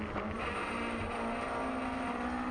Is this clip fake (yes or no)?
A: no